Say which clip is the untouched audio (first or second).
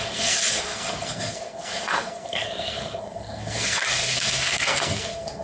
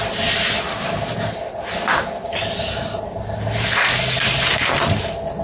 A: second